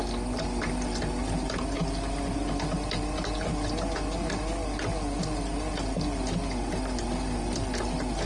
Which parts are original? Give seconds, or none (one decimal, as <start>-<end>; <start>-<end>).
0.0-8.3